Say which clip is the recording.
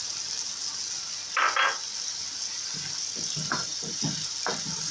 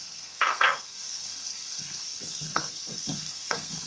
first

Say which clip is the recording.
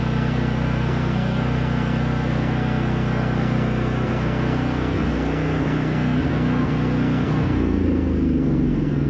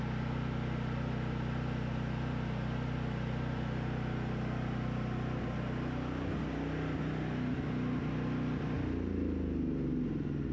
second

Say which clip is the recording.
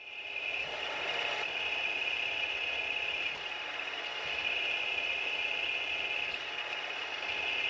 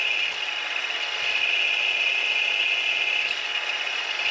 second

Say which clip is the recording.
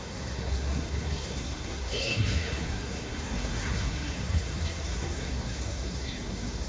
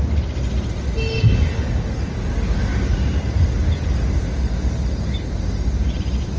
second